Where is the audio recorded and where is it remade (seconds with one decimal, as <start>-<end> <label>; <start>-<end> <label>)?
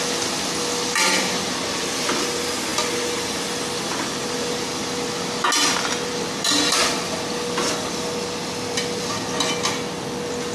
0.0-10.5 recorded